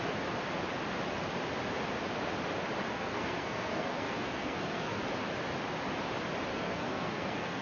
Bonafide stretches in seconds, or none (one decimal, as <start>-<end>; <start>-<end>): 0.0-2.8; 5.0-6.5